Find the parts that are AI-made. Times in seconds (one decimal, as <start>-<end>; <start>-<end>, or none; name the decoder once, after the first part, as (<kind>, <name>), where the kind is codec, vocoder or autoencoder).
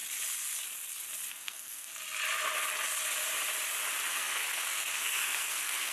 1.3-1.9 (codec, SNAC); 4.1-5.9